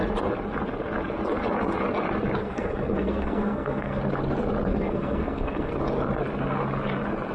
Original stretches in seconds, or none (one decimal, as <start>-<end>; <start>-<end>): 0.0-2.4; 4.0-4.7; 5.7-7.3

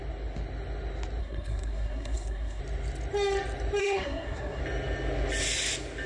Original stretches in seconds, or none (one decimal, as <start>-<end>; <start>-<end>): 0.0-1.2; 2.6-3.8; 4.6-6.1

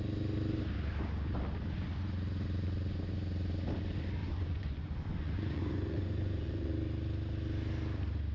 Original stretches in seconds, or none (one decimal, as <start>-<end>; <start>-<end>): 0.0-4.2; 6.7-8.3